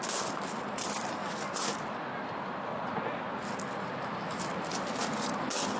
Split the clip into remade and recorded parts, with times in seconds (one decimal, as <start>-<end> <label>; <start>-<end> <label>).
0.0-5.8 recorded